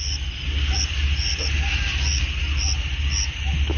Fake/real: real